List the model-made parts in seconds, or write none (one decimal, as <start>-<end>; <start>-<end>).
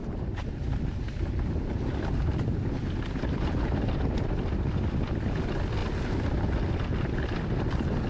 0.0-4.5